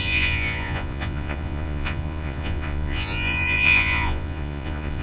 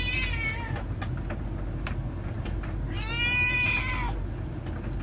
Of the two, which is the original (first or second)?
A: second